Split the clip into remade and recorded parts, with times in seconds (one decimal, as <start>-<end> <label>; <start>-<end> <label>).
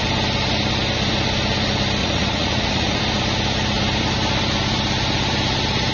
0.0-2.0 recorded; 2.0-3.0 remade; 3.0-5.9 recorded